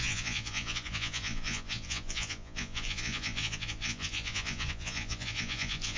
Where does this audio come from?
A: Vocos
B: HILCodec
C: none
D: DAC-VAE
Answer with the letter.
A